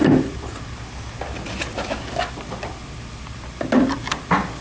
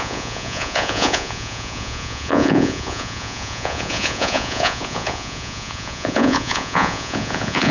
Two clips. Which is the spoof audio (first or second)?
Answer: second